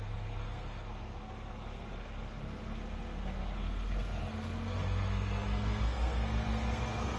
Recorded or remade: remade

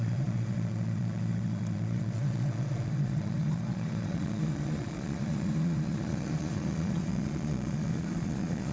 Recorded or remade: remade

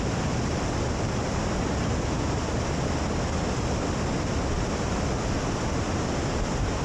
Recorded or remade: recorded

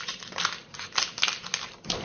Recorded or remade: recorded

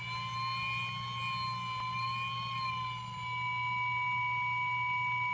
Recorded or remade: recorded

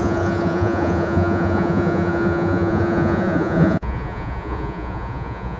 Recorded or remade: remade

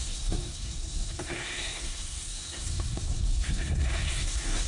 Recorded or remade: remade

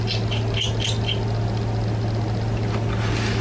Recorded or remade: recorded